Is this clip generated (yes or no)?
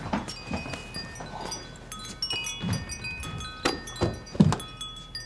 no